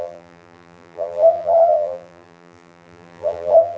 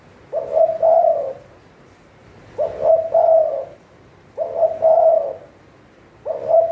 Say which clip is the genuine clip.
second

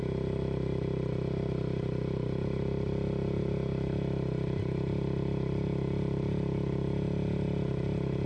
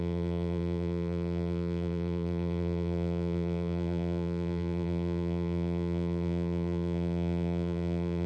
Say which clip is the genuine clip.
first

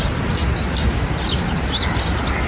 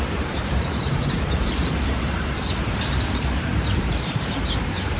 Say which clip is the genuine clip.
first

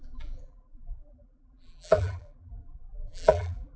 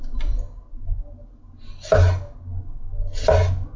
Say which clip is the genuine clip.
second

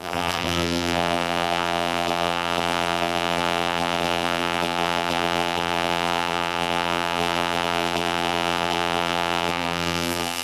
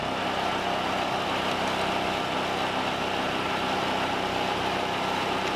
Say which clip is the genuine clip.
second